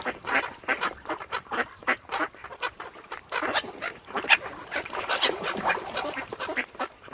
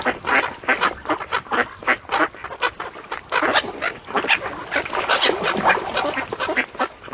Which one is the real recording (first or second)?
second